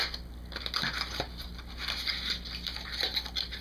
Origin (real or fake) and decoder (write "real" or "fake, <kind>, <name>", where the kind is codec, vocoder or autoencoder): real